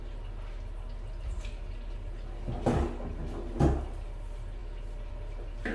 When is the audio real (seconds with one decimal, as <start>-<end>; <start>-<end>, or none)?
0.0-5.7